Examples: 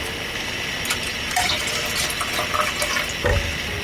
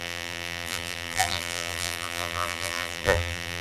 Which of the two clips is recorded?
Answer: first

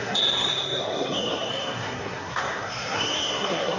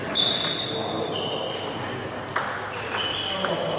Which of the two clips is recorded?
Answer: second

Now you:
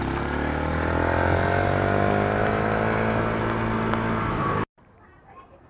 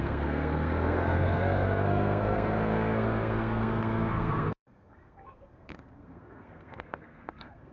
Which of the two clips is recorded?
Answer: first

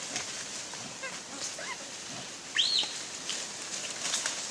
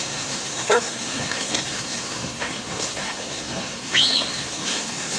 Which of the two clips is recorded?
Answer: first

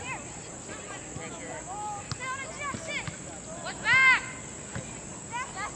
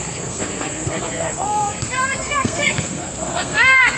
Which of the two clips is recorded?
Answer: first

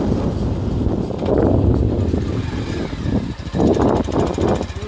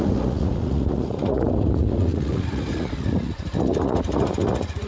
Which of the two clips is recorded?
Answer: first